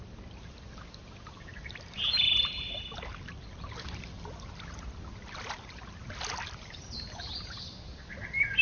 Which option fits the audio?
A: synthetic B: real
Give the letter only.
B